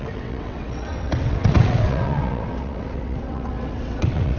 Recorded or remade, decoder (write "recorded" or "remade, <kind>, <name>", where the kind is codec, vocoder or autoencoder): remade, vocoder, WaveNeXt